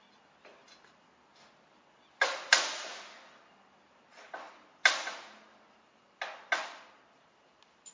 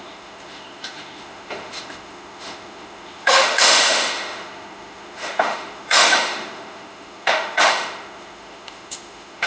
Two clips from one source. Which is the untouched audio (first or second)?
first